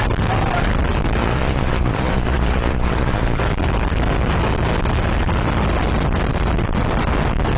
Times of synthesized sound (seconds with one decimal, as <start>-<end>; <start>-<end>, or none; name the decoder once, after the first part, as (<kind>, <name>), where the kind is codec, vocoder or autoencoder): 1.2-3.4 (vocoder, Vocos)